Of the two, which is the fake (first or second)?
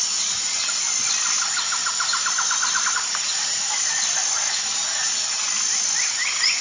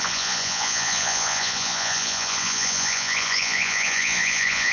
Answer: second